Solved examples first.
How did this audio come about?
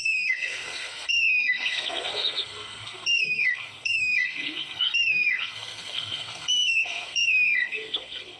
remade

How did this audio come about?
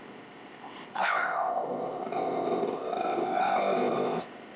remade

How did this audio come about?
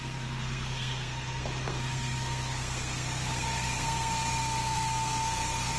remade